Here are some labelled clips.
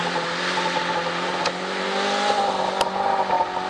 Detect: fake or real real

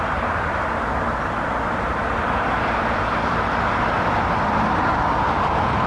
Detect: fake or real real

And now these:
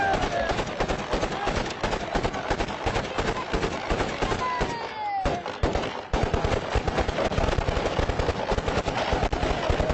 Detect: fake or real real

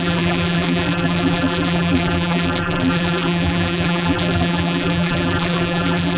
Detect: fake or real fake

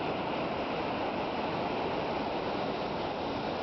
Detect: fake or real real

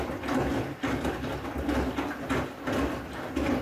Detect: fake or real real